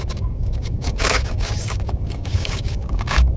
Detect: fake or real fake